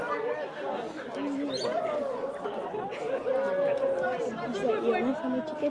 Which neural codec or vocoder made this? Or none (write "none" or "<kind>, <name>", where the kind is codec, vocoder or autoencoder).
none